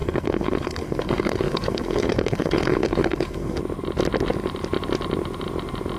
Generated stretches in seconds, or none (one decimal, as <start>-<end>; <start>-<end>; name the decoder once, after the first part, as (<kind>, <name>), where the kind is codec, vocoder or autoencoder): 0.0-3.6 (codec, SNAC)